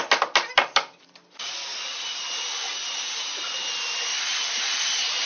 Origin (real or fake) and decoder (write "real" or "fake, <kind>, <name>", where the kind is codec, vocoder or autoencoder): real